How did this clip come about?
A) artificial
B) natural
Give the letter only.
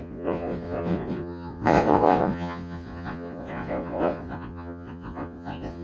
A